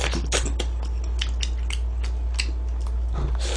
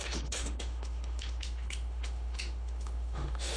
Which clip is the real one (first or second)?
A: first